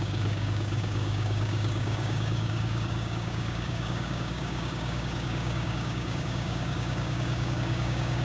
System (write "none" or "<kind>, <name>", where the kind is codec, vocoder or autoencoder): codec, DAC